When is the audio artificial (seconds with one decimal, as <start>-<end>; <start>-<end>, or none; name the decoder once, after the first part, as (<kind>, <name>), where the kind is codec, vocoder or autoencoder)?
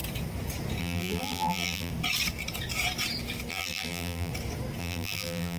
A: 0.8-1.9 (vocoder, BigVGAN v2); 3.5-4.3; 4.8-5.6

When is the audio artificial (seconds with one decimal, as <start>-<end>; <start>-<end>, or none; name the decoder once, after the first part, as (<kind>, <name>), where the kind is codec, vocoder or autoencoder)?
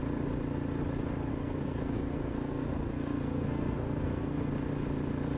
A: 1.3-4.5 (codec, SNAC)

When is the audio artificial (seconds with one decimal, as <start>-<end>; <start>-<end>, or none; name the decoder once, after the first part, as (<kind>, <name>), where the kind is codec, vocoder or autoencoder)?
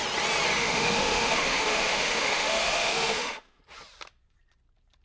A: 0.6-3.6 (autoencoder, DAC-VAE)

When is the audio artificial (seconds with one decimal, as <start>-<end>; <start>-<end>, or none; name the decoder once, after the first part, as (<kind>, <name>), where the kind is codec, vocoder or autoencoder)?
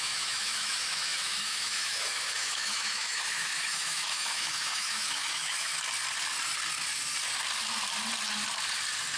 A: 0.0-5.7 (autoencoder, DAC-VAE)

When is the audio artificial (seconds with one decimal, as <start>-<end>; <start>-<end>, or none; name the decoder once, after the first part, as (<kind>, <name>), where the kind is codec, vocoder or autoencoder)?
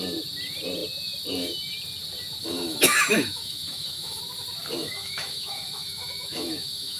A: 2.4-4.2 (autoencoder, DAC-VAE); 4.8-7.0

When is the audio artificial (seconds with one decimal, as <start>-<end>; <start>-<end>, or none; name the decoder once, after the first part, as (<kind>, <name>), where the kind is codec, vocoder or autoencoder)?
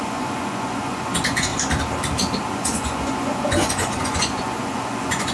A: 0.0-1.5 (vocoder, Vocos); 2.5-5.3